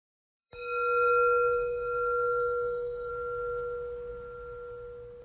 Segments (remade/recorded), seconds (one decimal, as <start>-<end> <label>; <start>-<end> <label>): 0.0-3.1 remade; 3.1-5.2 recorded